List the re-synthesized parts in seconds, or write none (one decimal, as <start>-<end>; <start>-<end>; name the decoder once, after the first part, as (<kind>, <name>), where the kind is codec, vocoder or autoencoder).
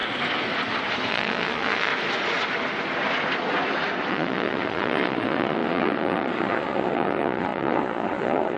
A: 1.1-1.9 (vocoder, Vocos); 4.1-8.6